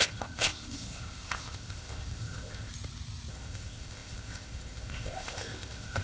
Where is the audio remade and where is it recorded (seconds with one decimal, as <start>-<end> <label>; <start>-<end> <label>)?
0.0-2.7 remade; 2.7-3.3 recorded; 3.3-6.0 remade